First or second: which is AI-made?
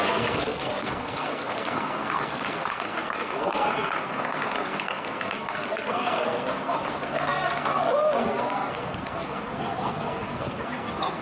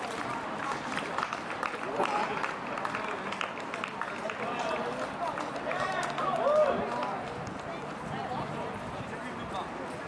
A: first